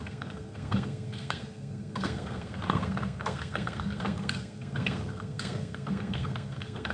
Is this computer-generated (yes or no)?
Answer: yes